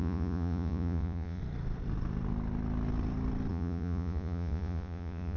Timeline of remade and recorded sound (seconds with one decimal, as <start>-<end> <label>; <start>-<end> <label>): 0.0-1.4 remade; 1.4-3.5 recorded; 3.5-5.4 remade